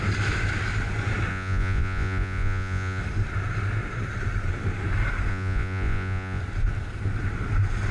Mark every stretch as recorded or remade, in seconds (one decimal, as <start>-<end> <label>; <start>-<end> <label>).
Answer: 0.0-1.3 recorded; 1.3-3.0 remade; 3.0-5.3 recorded; 5.3-6.4 remade; 6.4-7.9 recorded